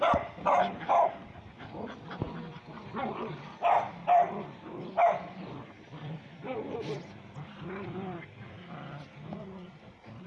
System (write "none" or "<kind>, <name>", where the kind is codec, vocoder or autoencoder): vocoder, BigVGAN v2